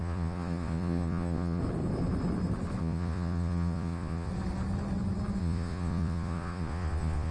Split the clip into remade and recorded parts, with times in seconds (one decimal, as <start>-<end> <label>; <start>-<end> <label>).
0.0-1.6 remade; 1.6-2.8 recorded; 2.8-4.3 remade; 4.3-5.4 recorded; 5.4-7.3 remade